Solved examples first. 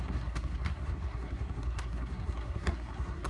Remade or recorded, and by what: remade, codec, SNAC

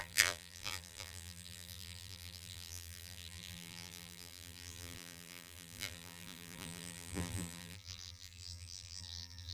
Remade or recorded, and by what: remade, vocoder, BigVGAN v2